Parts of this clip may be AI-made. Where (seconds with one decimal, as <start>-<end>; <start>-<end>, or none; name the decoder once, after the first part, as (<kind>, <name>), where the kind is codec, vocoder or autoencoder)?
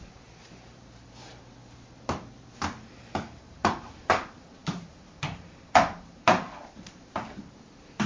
0.0-1.6 (vocoder, BigVGAN v2); 2.5-8.1